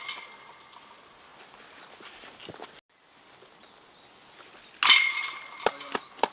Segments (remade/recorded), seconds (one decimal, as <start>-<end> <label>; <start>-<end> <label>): 0.0-6.3 recorded